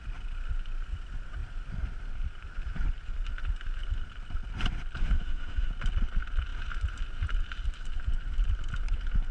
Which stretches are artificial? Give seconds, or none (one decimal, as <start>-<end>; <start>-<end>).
5.0-5.7